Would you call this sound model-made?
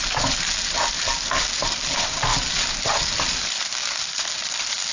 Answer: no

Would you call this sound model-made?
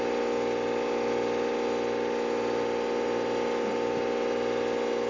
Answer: no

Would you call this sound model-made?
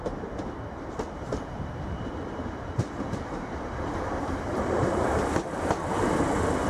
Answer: yes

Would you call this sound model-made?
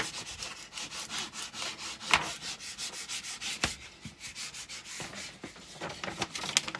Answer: no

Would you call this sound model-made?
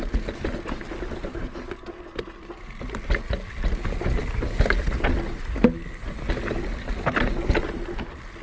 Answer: no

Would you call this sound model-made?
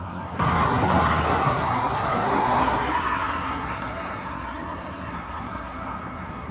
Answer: yes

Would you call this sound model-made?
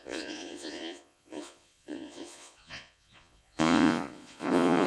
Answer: yes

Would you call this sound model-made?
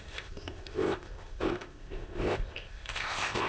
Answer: yes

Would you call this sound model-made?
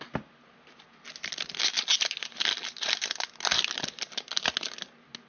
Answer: no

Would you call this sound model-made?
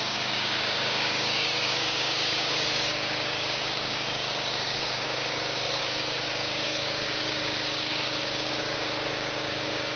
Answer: yes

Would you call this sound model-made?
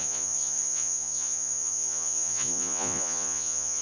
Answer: yes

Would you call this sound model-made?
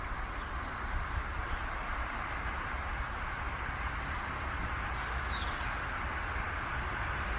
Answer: no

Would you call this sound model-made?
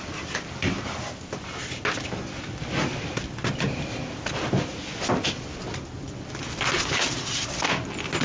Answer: no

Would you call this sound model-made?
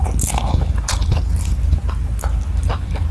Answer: no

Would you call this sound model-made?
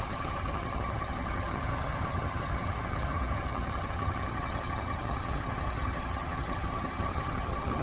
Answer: yes